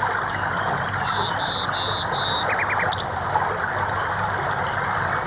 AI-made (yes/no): no